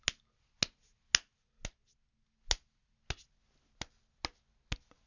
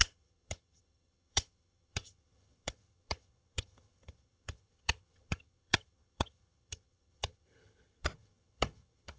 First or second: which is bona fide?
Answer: first